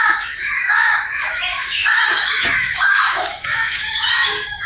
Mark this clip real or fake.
fake